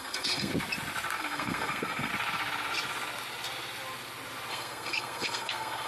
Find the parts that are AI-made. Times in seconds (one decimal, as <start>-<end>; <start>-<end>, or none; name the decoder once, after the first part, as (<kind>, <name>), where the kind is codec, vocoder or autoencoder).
0.0-0.5 (codec, SNAC); 1.2-2.1; 4.5-5.9